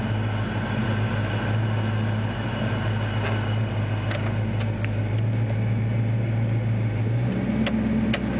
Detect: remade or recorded recorded